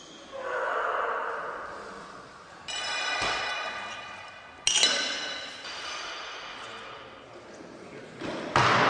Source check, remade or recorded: recorded